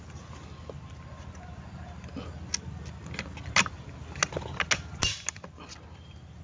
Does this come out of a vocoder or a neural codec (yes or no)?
no